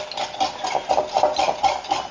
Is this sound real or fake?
real